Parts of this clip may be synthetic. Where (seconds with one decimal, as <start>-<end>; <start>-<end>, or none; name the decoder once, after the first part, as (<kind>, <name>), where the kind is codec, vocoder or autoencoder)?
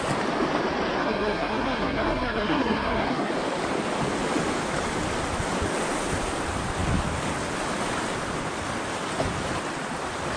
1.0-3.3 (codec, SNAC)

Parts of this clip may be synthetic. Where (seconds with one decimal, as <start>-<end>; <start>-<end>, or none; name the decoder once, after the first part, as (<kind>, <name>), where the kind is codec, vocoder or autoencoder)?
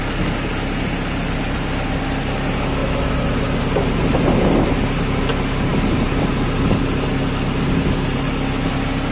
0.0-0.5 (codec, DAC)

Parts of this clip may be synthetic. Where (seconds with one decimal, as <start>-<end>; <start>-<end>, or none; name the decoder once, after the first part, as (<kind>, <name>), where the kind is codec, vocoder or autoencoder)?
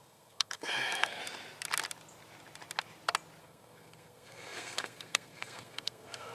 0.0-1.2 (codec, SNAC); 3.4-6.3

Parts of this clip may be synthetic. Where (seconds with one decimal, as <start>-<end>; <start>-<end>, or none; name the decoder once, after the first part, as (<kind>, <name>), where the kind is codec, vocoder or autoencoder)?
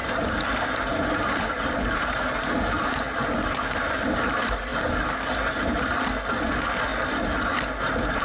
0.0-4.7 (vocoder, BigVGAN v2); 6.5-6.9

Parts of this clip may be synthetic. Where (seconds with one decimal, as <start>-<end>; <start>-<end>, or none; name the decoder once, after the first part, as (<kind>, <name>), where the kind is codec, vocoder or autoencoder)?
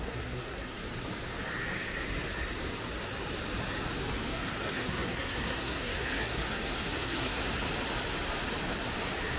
0.0-0.8 (codec, SNAC); 4.3-7.4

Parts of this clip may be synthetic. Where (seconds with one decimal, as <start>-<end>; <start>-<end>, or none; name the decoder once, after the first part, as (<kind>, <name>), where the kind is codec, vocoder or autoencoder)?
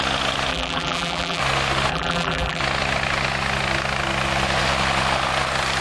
0.5-1.4 (vocoder, BigVGAN v2); 1.9-2.6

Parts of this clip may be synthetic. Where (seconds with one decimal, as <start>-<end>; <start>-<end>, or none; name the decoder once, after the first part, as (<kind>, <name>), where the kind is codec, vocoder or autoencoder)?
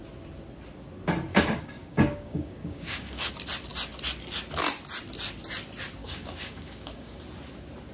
1.3-3.3 (codec, DAC); 6.0-7.2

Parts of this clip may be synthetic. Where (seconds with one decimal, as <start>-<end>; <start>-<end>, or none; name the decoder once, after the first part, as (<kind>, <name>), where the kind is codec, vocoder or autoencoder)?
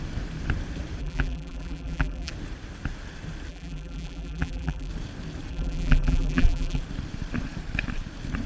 1.0-2.3 (vocoder, BigVGAN v2); 3.5-4.9; 5.5-6.8